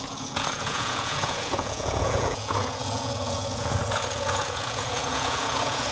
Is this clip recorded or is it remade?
remade